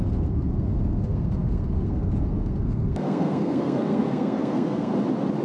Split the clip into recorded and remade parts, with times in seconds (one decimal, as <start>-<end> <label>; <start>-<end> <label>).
0.0-4.9 remade; 4.9-5.4 recorded

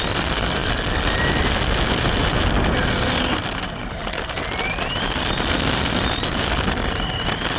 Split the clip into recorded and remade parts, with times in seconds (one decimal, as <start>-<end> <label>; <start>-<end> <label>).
0.0-7.6 recorded

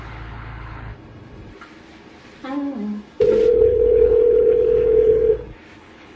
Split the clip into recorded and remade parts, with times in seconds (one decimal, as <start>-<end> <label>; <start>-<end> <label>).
0.0-0.9 remade; 0.9-3.5 recorded; 3.5-5.3 remade; 5.3-5.8 recorded; 5.8-6.2 remade

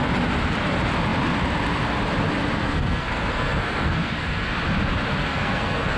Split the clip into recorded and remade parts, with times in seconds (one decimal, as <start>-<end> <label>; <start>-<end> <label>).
0.0-2.6 recorded; 2.6-4.5 remade; 4.5-5.2 recorded; 5.2-6.0 remade

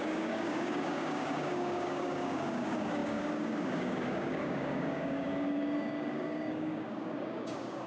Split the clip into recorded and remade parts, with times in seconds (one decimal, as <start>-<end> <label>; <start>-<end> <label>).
0.0-7.9 remade

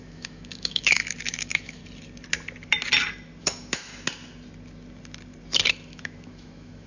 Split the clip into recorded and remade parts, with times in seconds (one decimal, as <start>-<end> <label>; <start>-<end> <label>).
0.0-1.8 remade; 1.8-3.4 recorded; 3.4-3.9 remade; 3.9-5.7 recorded; 5.7-6.9 remade

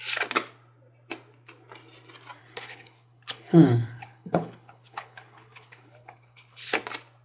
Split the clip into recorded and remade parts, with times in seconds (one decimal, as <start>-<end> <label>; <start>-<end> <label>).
0.0-2.4 recorded; 2.4-6.7 remade; 6.7-7.2 recorded

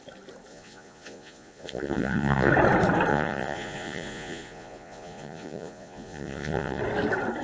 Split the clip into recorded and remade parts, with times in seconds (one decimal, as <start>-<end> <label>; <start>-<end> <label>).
0.0-0.5 recorded; 0.5-2.5 remade; 2.5-3.1 recorded; 3.1-6.8 remade; 6.8-7.4 recorded